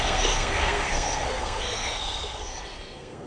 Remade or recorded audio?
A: remade